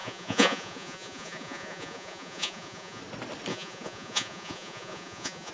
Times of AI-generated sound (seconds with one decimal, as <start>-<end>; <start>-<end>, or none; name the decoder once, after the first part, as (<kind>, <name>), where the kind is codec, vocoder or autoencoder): 0.0-3.0 (vocoder, Vocos); 3.5-5.5